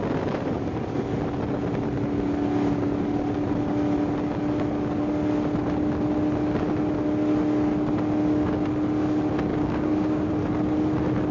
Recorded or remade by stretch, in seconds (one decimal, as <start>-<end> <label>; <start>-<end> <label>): 0.0-9.5 recorded; 9.5-10.3 remade; 10.3-11.3 recorded